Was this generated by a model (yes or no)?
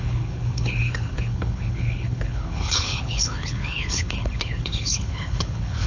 yes